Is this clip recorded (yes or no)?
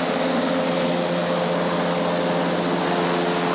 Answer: yes